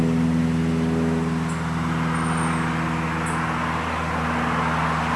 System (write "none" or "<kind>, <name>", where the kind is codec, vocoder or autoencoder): none